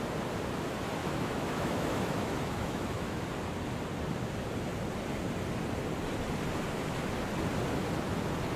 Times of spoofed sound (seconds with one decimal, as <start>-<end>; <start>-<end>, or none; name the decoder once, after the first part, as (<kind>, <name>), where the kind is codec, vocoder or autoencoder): 1.0-3.2 (autoencoder, DAC-VAE)